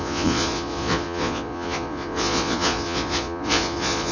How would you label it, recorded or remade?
remade